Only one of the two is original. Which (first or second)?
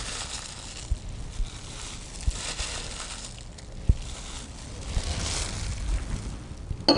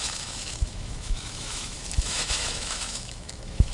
first